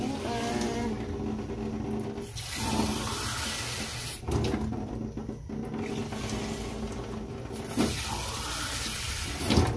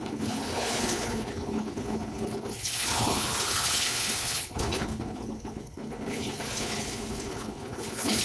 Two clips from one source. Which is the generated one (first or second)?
second